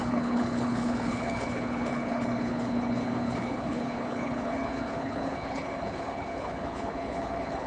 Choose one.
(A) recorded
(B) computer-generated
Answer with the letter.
B